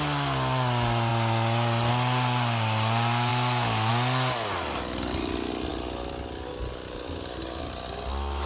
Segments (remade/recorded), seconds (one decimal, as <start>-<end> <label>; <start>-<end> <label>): 0.0-8.5 recorded